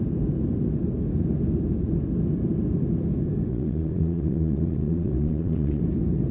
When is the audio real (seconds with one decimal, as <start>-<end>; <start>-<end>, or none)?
0.0-3.5; 5.8-6.3